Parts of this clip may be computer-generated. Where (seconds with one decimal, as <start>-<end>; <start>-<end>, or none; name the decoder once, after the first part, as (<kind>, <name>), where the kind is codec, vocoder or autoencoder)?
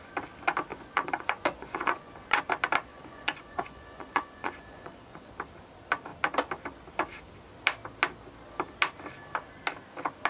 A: 0.7-2.4 (vocoder, Vocos); 2.9-5.3